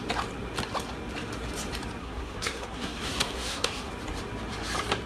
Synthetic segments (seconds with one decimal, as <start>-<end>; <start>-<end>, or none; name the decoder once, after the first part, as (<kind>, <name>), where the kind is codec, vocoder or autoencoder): 2.0-3.9 (codec, SNAC)